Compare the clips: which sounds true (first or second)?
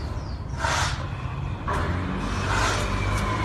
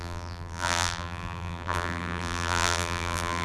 first